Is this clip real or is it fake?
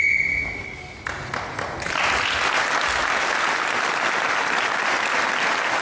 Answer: real